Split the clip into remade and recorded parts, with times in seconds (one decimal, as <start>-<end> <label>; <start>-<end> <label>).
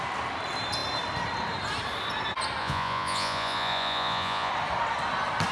0.0-2.6 recorded; 2.6-4.5 remade; 4.5-5.5 recorded